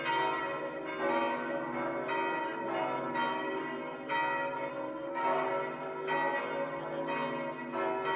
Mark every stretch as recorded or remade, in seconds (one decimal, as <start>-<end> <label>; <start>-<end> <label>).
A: 0.0-4.7 recorded; 4.7-5.5 remade; 5.5-8.2 recorded